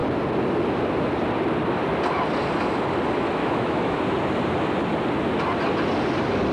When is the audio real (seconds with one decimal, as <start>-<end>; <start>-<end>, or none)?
0.0-3.4; 4.0-6.5